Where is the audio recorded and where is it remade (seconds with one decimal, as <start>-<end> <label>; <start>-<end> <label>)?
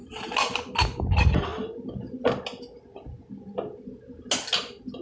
0.0-5.0 recorded